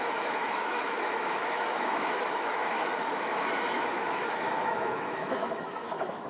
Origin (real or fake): fake